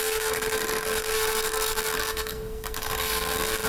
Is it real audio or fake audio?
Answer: fake